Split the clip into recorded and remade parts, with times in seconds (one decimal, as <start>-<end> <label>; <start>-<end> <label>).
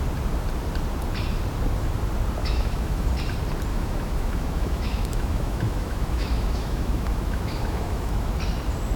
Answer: 0.0-2.4 recorded; 2.4-3.1 remade; 3.1-3.7 recorded; 3.7-8.3 remade; 8.3-9.0 recorded